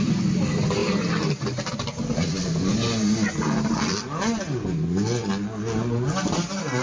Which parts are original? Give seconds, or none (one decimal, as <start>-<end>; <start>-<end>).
0.0-6.8